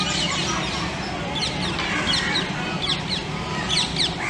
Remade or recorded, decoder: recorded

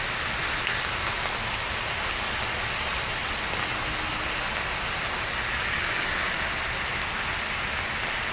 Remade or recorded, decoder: recorded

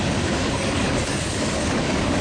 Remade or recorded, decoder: remade, codec, DAC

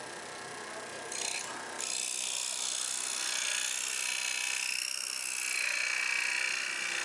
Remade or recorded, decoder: recorded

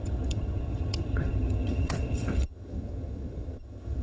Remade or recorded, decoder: remade, vocoder, HiFi-GAN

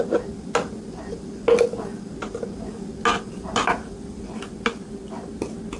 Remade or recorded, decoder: recorded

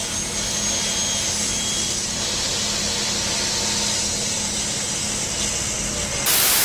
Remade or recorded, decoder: recorded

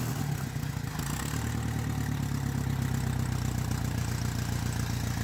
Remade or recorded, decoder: recorded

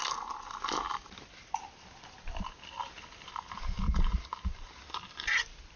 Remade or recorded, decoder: recorded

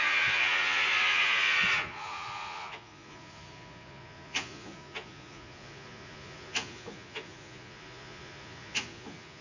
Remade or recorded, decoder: remade, vocoder, Vocos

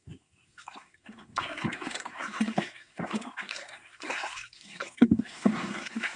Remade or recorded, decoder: remade, codec, SNAC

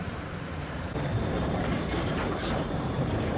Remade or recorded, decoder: remade, vocoder, BigVGAN v2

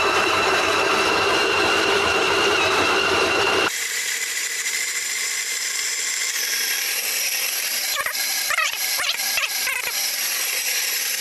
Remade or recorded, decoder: remade, vocoder, BigVGAN v2